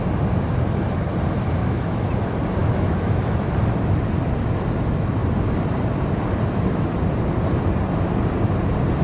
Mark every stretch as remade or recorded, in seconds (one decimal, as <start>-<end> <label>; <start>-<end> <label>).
0.0-1.6 recorded; 1.6-2.1 remade; 2.1-2.6 recorded; 2.6-3.5 remade; 3.5-9.0 recorded